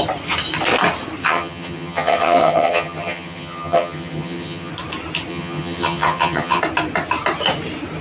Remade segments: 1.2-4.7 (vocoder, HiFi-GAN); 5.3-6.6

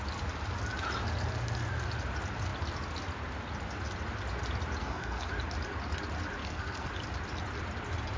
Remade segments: 4.8-5.3 (codec, SNAC); 6.4-6.9

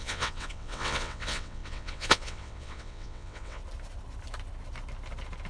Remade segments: 0.0-3.6 (vocoder, WaveNeXt)

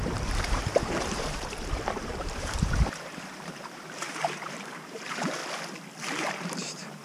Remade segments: 0.0-5.4 (vocoder, BigVGAN v2); 6.0-7.0